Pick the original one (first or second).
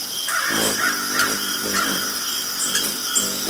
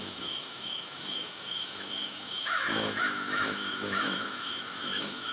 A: first